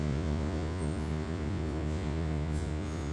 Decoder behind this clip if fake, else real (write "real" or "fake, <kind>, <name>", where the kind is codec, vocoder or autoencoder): fake, vocoder, Vocos